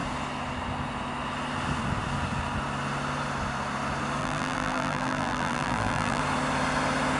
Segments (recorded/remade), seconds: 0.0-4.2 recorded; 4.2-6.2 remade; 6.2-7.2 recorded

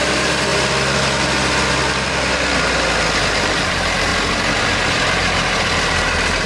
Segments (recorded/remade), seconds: 0.0-0.5 remade; 0.5-3.2 recorded; 3.2-4.1 remade; 4.1-4.6 recorded; 4.6-6.5 remade

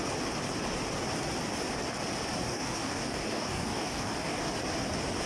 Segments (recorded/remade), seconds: 0.0-2.4 recorded; 2.4-4.4 remade; 4.4-5.3 recorded

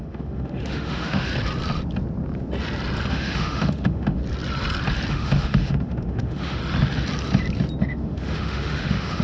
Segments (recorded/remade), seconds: 0.0-1.3 remade; 1.3-3.1 recorded; 3.1-4.2 remade; 4.2-5.1 recorded; 5.1-6.6 remade; 6.6-7.8 recorded; 7.8-9.2 remade

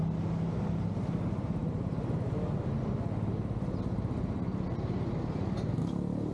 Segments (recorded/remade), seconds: 0.0-6.3 recorded

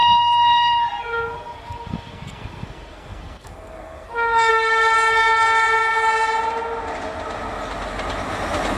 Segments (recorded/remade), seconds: 0.0-4.5 remade; 4.5-8.8 recorded

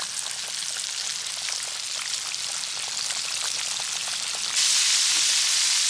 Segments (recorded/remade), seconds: 0.0-5.9 recorded